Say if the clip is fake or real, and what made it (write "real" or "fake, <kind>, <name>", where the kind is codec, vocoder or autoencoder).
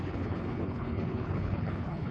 fake, codec, HILCodec